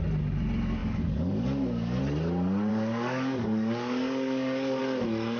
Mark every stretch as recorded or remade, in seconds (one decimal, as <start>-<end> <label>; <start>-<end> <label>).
0.0-0.8 recorded; 0.8-2.0 remade; 2.0-2.7 recorded; 2.7-4.8 remade; 4.8-5.4 recorded